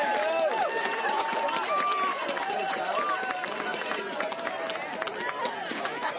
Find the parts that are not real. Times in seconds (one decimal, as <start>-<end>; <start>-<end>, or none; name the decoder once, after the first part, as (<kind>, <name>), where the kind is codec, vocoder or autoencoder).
0.8-1.4 (vocoder, Vocos); 2.1-2.8; 3.7-4.3; 5.7-6.2